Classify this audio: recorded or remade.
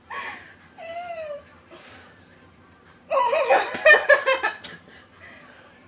remade